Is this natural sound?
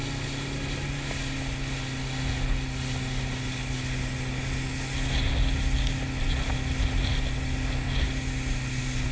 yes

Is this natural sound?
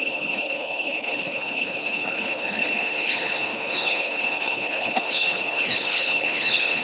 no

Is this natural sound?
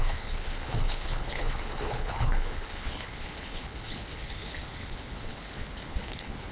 no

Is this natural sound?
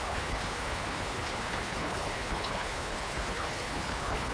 no